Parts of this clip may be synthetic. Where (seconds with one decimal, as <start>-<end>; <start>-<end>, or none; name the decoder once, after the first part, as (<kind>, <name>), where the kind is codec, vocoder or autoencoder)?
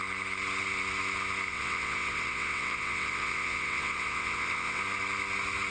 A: 1.5-4.8 (vocoder, WaveNeXt)